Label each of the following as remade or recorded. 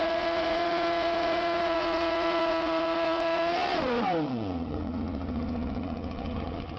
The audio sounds remade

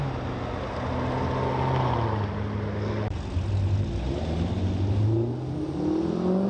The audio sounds recorded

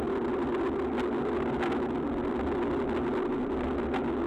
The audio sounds recorded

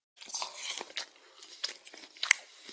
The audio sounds recorded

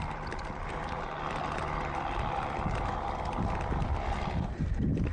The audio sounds recorded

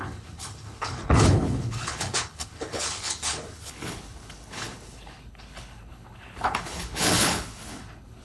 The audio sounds remade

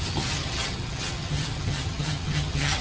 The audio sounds remade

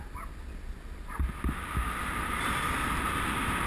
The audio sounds recorded